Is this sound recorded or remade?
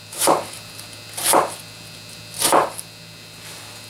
recorded